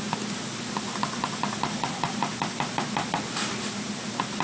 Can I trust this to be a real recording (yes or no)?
yes